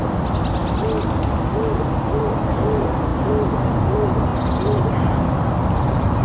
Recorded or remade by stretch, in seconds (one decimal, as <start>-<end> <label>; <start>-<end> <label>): 0.0-6.2 recorded